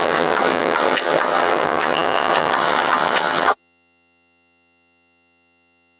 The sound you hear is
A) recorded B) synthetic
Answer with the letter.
B